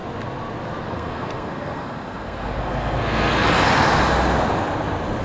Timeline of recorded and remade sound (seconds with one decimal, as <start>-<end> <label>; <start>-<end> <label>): 0.0-0.9 recorded; 0.9-3.3 remade; 3.3-5.2 recorded

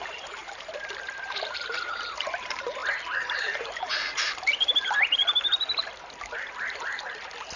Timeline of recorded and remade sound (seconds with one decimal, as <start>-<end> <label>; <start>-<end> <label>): 0.0-2.8 remade; 2.8-3.4 recorded; 3.4-5.2 remade; 5.2-7.6 recorded